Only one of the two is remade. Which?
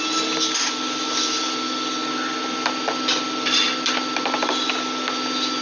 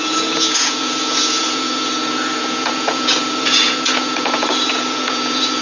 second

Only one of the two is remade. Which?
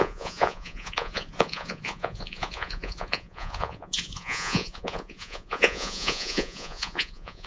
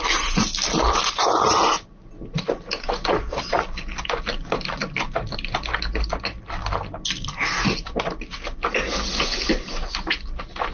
first